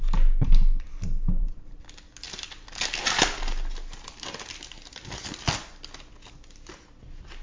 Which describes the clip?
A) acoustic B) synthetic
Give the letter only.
A